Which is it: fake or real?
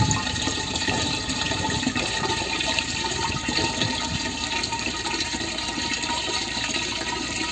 fake